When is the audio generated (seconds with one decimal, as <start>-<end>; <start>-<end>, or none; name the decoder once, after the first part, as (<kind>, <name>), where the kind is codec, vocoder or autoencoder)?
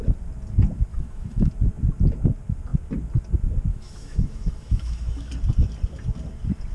0.9-1.5 (autoencoder, DAC-VAE); 3.7-5.3